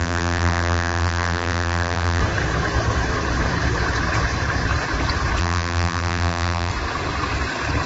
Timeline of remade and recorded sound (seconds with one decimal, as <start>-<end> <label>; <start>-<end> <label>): 0.0-2.2 remade; 2.2-5.4 recorded; 5.4-6.7 remade; 6.7-7.9 recorded